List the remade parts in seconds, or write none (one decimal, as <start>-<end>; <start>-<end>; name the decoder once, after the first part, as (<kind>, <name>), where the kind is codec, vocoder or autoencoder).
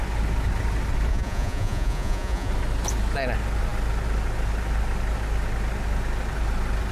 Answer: 1.1-2.5 (vocoder, Vocos)